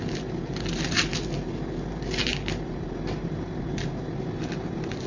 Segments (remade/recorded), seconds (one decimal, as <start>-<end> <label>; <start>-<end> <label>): 0.0-5.1 recorded